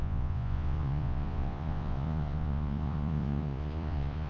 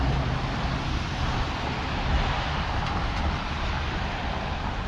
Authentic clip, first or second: second